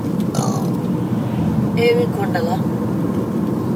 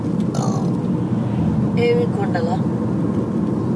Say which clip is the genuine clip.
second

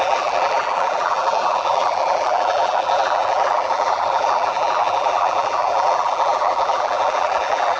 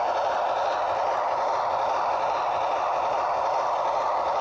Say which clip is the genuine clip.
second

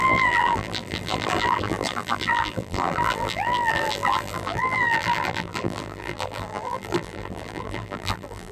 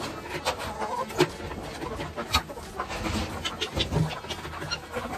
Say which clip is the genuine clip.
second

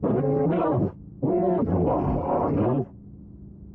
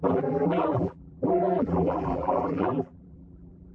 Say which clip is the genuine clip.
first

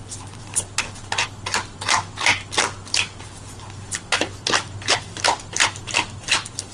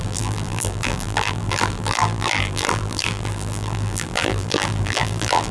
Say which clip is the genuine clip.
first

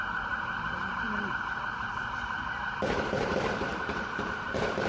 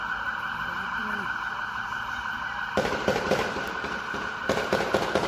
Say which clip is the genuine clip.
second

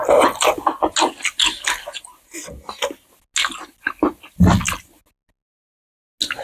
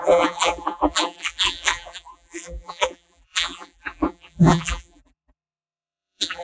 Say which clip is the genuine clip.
first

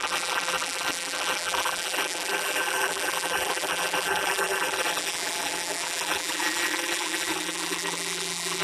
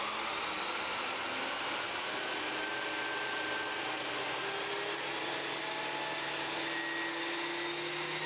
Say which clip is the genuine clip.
second